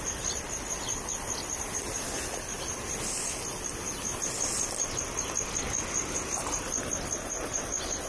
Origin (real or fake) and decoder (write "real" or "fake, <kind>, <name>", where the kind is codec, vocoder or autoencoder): real